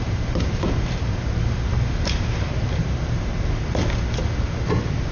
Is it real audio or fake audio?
fake